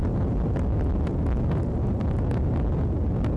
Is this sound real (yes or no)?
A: yes